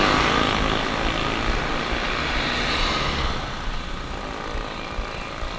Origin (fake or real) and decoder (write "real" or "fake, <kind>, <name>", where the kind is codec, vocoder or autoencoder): real